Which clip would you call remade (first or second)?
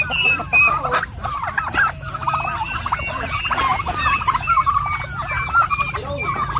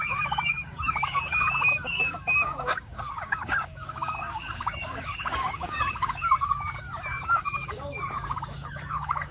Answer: second